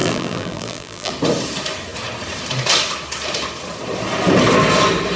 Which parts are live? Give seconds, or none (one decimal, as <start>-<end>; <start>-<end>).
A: 1.1-5.2